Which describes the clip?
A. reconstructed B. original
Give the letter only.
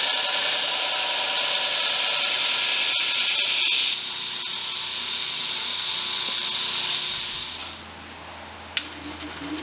B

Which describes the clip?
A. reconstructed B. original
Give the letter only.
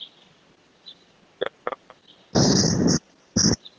B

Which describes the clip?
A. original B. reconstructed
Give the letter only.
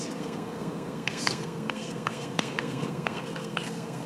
B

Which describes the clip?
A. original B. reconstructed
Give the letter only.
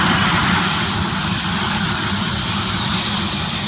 A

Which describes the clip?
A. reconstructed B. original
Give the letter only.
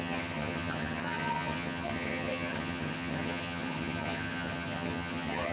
A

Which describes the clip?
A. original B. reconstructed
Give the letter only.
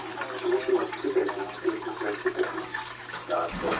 A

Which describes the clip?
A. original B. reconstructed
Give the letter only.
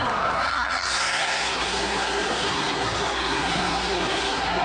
B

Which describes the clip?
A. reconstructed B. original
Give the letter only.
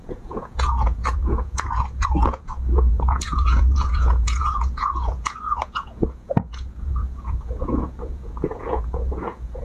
A